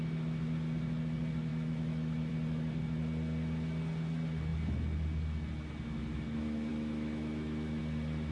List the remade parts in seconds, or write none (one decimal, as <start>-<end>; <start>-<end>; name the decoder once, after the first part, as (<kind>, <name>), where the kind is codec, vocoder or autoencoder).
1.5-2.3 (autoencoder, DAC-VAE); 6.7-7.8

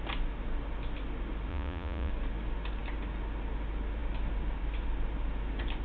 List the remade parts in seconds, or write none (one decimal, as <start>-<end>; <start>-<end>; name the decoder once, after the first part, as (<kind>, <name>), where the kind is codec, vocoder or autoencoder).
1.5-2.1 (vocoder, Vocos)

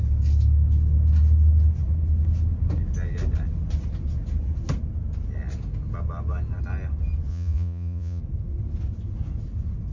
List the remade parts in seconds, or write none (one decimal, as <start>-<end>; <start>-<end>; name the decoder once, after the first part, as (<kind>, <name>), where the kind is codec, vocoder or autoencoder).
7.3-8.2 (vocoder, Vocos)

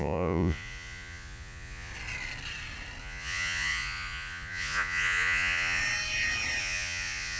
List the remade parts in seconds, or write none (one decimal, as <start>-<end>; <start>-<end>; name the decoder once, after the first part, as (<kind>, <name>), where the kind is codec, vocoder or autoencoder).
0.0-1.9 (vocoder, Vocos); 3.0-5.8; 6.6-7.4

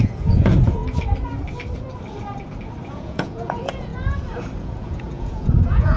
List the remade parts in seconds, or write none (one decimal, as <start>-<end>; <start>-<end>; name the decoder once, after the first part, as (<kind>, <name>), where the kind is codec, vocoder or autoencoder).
0.0-0.8 (vocoder, Vocos); 2.9-3.9; 4.6-6.0

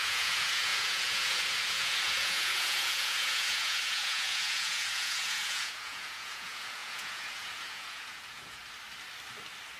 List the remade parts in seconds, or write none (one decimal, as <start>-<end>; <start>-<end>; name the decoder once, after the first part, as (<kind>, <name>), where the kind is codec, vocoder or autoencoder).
0.0-8.6 (vocoder, Vocos)

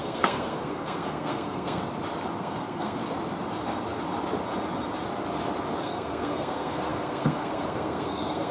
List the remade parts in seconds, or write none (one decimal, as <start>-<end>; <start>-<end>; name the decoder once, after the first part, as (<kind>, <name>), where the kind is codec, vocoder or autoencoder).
0.0-1.8 (codec, SNAC); 2.4-3.0; 5.8-8.5

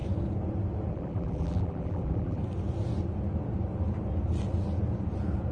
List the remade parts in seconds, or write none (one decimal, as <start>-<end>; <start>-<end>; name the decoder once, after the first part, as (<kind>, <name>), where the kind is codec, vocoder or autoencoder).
0.9-2.4 (vocoder, BigVGAN v2)